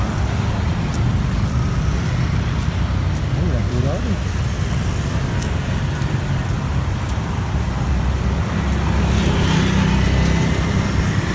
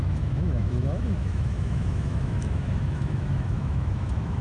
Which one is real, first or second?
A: first